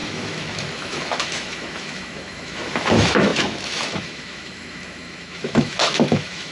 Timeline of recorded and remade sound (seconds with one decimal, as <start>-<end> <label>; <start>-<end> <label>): 0.0-6.5 remade